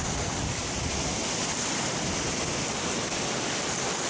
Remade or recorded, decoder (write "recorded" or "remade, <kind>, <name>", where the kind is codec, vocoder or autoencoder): recorded